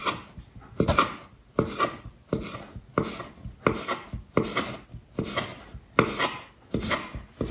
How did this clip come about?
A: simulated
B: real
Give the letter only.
B